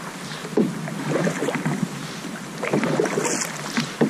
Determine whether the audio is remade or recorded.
recorded